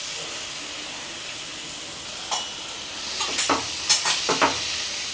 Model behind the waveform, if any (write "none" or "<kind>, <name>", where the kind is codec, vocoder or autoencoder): none